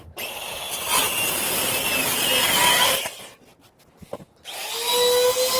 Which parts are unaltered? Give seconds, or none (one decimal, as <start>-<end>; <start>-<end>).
0.0-2.6; 3.1-5.6